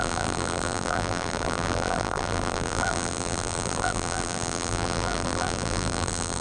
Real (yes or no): no